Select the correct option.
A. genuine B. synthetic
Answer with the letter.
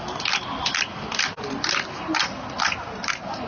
A